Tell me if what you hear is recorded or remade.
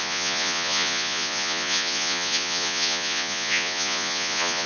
remade